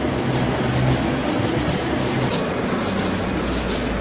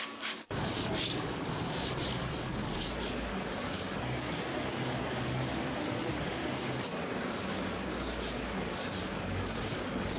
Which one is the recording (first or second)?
first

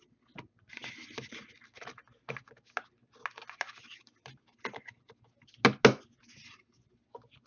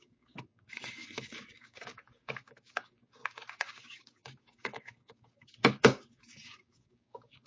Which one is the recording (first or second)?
first